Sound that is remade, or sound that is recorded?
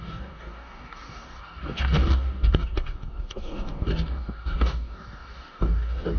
remade